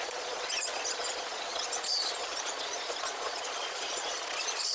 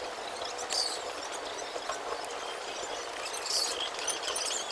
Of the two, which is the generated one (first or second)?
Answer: first